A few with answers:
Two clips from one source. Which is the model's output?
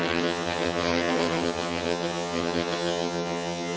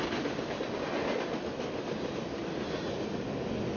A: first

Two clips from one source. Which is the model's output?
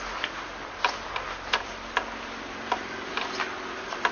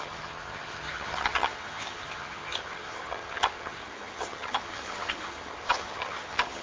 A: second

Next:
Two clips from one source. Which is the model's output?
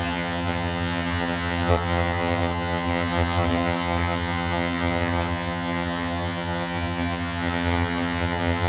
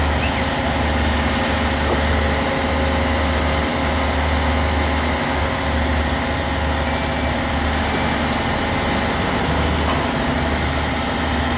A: first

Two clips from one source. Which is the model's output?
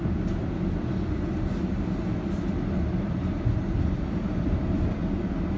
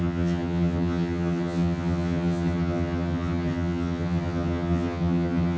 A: second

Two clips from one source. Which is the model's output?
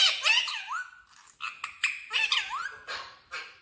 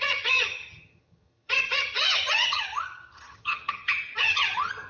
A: second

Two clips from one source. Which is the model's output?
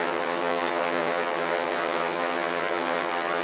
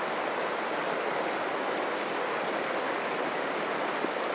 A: first